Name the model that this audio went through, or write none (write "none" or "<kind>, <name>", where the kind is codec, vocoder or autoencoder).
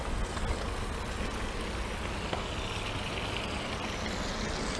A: none